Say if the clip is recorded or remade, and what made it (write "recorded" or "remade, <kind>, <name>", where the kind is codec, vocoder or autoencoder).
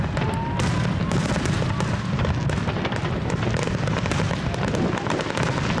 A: recorded